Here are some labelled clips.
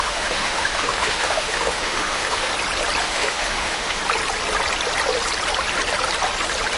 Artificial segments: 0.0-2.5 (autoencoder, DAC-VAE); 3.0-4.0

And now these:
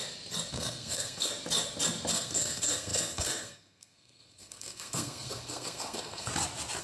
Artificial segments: 0.5-1.3 (codec, SNAC); 2.1-6.3

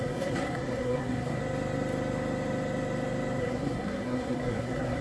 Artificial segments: 0.0-1.4 (codec, SNAC); 3.4-5.0